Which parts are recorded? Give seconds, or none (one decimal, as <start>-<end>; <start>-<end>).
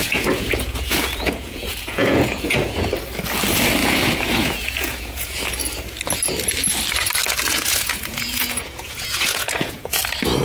2.9-3.8; 5.6-7.5; 10.0-10.4